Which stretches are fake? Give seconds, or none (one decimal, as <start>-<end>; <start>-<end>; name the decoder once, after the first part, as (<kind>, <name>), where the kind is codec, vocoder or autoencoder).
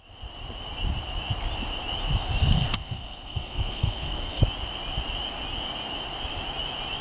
2.4-4.4 (codec, SNAC)